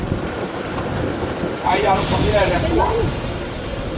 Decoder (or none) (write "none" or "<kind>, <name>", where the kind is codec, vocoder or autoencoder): vocoder, BigVGAN v2